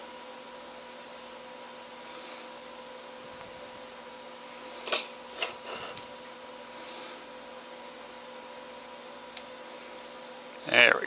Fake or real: real